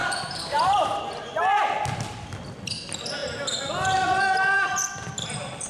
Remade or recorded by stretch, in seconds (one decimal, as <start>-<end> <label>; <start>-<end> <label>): 0.0-1.4 remade; 1.4-5.7 recorded